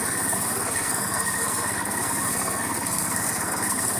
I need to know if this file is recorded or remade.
remade